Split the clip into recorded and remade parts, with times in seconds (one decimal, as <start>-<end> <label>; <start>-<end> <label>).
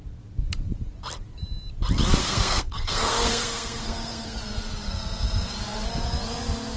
0.0-2.2 recorded; 2.2-4.4 remade; 4.4-6.8 recorded